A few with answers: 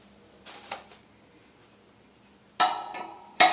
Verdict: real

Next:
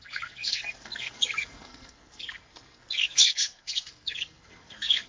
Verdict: fake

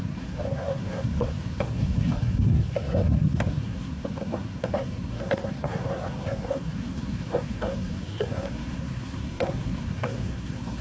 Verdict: fake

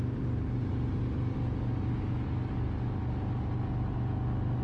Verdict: real